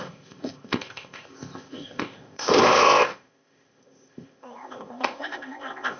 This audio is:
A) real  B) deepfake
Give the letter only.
B